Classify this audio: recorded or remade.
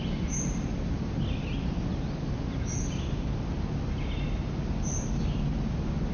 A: recorded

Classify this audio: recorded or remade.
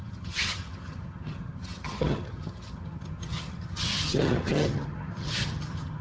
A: remade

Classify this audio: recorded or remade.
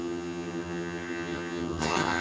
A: remade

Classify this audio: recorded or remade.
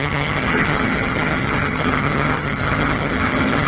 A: remade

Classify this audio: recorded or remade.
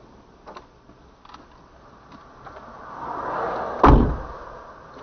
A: recorded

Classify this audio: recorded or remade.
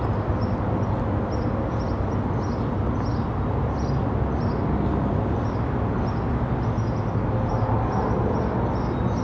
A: recorded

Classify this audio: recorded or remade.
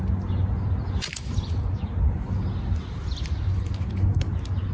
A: recorded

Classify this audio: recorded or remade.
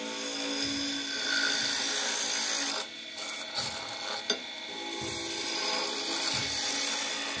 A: recorded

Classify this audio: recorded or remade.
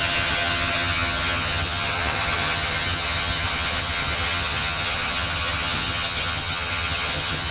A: remade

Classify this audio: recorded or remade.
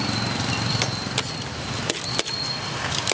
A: recorded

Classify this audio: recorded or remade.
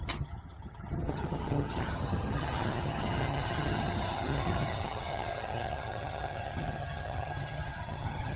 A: remade